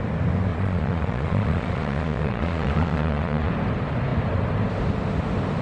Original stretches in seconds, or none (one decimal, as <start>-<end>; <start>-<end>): 0.0-0.5; 3.5-5.6